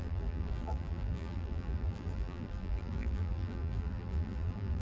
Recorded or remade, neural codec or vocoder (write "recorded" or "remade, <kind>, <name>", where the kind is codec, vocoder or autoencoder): remade, vocoder, BigVGAN v2